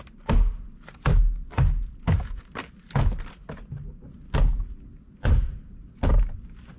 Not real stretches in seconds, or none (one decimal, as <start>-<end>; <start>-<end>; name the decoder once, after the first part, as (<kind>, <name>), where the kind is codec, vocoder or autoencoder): none